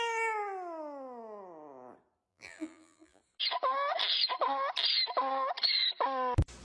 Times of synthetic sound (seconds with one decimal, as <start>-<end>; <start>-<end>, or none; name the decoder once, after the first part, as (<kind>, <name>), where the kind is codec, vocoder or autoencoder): 2.3-3.2 (vocoder, BigVGAN v2)